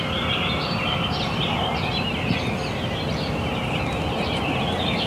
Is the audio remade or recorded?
recorded